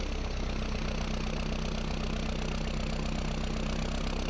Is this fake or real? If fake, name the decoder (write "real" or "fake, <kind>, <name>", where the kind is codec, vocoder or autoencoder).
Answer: real